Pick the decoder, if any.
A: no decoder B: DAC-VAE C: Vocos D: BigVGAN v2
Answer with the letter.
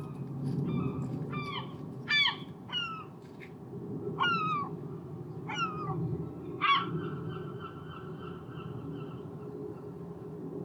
A